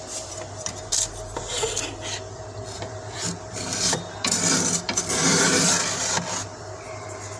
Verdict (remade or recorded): remade